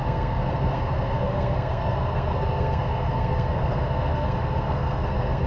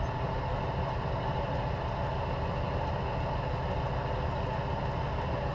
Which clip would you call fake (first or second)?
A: first